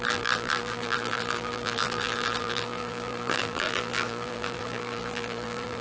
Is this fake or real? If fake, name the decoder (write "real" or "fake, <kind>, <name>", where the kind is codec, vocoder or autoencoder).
fake, vocoder, BigVGAN v2